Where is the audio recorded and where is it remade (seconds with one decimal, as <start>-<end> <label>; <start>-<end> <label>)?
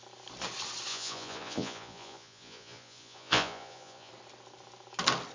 0.0-0.9 recorded; 0.9-4.1 remade; 4.1-5.3 recorded